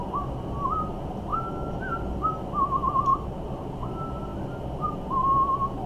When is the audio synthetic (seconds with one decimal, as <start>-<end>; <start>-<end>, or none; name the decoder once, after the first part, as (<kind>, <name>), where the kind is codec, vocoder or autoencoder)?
1.3-1.8 (autoencoder, DAC-VAE)